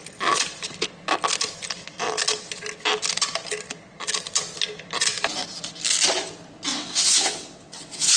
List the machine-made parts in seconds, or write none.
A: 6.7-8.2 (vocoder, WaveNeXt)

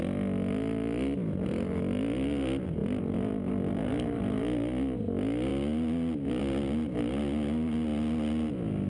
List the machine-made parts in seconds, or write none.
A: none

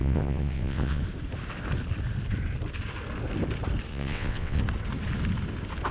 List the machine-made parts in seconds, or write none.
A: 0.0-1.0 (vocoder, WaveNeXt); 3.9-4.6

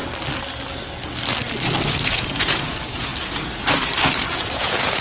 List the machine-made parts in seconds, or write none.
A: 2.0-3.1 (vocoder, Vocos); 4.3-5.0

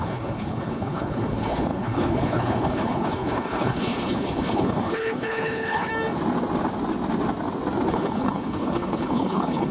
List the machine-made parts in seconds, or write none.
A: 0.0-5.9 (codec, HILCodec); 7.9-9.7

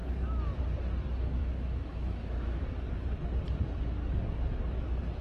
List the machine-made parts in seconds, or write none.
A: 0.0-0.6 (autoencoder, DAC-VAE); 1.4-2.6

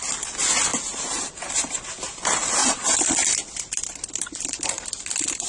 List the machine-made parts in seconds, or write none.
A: 0.7-1.3 (vocoder, BigVGAN v2); 2.6-3.1

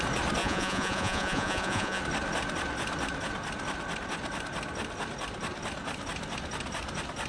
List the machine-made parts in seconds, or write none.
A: 0.4-2.0 (vocoder, Vocos)